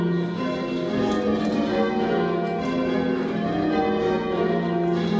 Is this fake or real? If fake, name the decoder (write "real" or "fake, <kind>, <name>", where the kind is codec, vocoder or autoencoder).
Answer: real